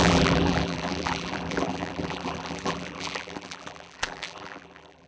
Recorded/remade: remade